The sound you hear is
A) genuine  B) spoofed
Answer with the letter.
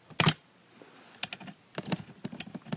A